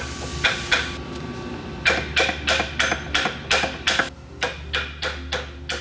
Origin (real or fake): real